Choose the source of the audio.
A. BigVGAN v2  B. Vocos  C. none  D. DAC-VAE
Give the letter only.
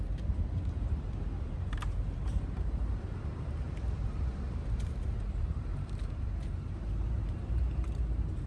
A